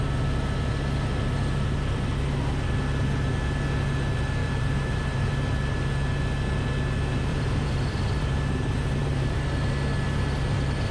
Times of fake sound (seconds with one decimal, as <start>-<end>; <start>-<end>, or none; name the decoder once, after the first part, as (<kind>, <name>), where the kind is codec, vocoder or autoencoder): 4.4-5.3 (vocoder, BigVGAN v2); 7.3-8.4; 9.0-9.7